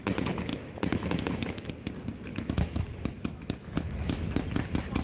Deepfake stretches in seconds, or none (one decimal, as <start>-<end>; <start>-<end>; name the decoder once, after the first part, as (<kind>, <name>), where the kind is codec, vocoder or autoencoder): 0.5-1.7 (autoencoder, DAC-VAE); 2.3-4.4